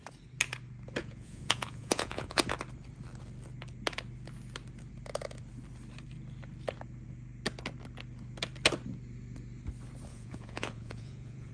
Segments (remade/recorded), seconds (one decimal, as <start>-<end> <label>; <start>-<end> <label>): 0.0-1.0 recorded; 1.0-2.4 remade; 2.4-10.1 recorded; 10.1-11.5 remade